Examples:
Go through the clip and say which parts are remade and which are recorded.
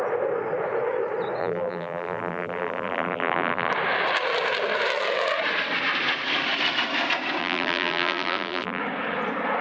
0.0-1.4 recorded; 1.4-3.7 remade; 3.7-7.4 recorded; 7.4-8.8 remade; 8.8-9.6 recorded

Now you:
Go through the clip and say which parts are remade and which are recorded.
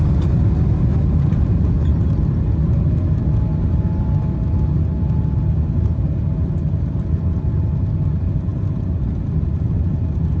0.0-10.4 recorded